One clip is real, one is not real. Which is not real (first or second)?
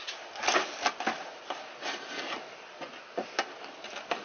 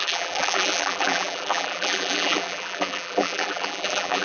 second